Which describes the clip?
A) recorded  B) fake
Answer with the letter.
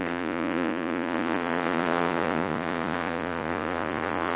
B